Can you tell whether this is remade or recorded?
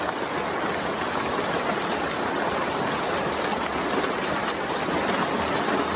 recorded